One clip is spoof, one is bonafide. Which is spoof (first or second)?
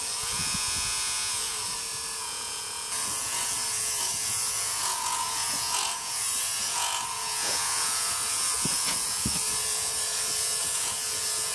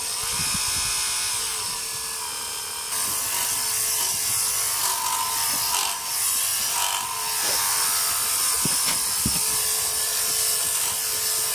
first